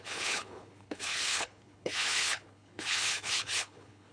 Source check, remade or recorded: remade